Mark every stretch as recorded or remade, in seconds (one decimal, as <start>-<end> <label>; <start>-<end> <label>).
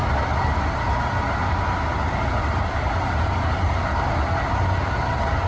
0.0-5.5 recorded